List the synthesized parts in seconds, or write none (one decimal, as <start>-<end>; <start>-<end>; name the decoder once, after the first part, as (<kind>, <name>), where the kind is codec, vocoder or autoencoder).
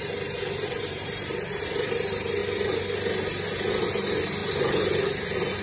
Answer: 0.0-2.4 (vocoder, BigVGAN v2); 3.7-4.4